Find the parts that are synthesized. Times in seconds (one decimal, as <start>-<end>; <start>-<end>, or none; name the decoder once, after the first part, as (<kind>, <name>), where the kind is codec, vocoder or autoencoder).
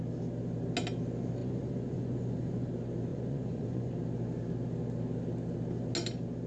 1.4-2.7 (vocoder, Vocos); 3.1-3.9